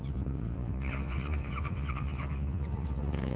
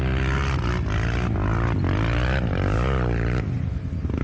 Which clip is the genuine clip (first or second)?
second